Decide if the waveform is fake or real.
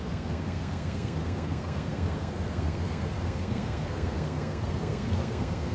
fake